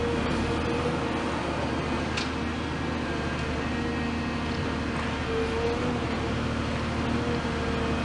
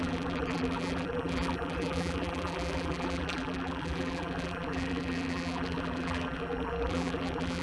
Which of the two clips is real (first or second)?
first